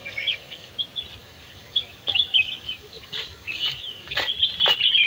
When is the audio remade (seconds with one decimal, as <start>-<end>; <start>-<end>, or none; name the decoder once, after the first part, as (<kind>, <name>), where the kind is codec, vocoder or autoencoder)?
0.0-0.7 (codec, DAC); 1.2-4.3